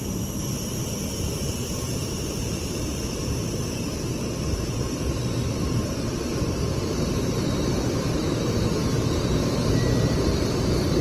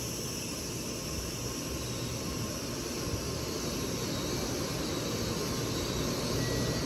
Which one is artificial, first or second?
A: first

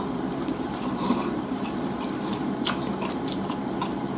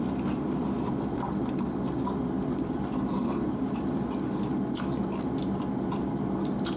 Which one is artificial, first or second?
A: first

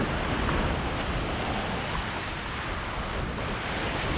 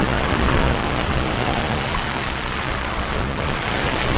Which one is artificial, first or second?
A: second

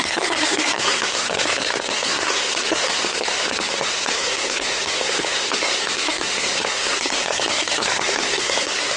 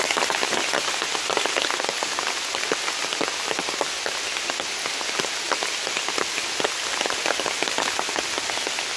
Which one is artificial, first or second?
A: first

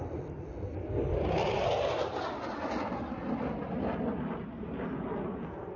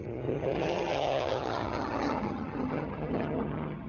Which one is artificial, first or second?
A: second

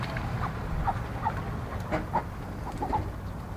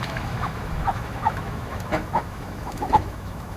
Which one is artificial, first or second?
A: second